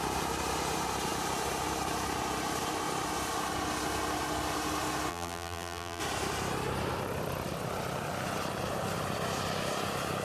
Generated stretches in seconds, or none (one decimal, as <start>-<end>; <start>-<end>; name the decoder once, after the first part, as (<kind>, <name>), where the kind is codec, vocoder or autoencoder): 5.1-6.0 (vocoder, BigVGAN v2)